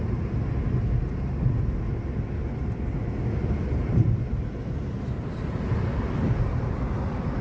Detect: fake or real real